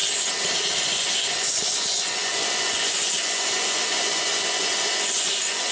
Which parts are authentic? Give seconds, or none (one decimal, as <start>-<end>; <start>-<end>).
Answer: 0.0-0.8